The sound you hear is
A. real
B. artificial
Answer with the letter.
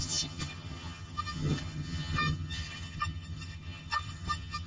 B